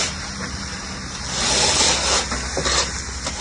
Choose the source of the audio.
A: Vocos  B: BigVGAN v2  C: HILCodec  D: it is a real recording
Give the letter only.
D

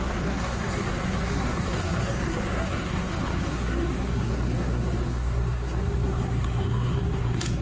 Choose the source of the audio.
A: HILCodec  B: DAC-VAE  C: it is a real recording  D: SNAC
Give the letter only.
D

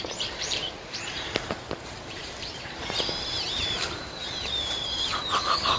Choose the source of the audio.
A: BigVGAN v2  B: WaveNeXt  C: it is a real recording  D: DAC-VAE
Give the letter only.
A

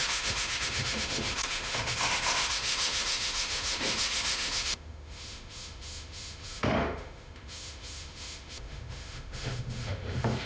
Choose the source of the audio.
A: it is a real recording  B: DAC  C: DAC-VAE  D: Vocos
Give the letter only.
C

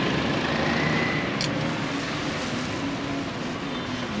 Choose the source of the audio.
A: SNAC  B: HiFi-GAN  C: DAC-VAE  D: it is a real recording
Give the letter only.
D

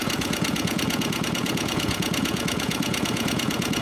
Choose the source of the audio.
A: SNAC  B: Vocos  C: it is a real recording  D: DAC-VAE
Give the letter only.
B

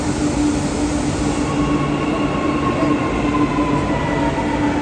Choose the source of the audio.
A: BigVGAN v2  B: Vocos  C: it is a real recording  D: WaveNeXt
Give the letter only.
C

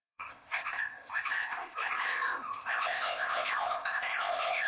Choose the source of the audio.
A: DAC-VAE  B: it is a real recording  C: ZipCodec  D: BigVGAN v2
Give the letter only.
C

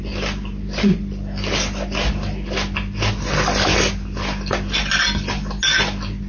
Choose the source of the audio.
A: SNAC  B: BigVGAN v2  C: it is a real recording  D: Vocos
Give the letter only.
C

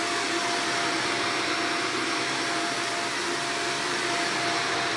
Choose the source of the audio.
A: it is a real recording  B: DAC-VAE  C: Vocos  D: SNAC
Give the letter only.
A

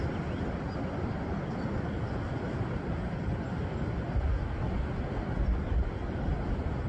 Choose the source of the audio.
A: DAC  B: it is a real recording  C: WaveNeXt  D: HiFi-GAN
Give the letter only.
B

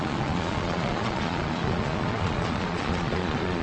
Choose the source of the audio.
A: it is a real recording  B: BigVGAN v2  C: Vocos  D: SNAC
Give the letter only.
C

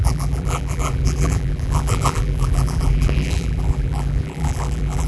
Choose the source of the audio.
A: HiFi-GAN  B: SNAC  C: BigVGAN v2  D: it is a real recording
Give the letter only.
C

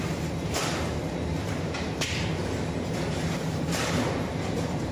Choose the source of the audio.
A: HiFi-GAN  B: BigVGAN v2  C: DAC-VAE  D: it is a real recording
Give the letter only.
B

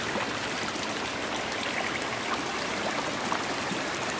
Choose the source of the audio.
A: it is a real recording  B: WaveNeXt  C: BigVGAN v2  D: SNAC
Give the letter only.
C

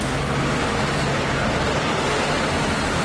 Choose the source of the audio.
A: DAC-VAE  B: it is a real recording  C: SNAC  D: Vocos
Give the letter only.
B